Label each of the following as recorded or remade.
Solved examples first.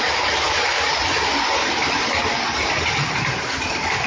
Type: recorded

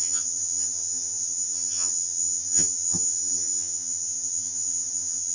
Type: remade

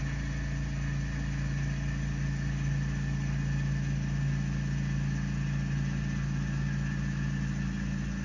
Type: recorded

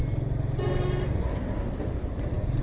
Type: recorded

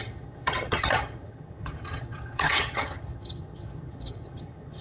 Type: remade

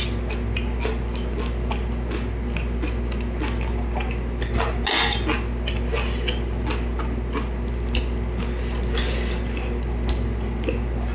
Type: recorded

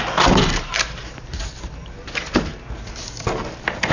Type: recorded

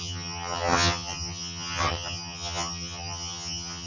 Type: remade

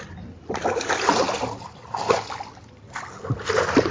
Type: recorded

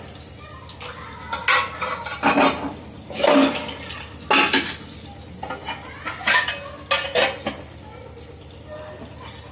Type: recorded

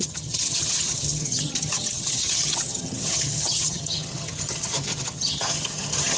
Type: remade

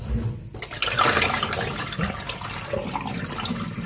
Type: recorded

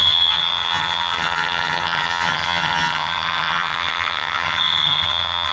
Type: remade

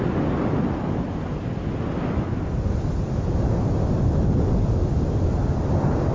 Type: recorded